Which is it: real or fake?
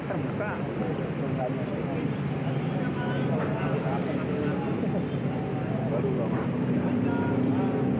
real